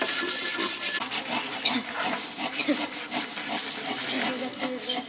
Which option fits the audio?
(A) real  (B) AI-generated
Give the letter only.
A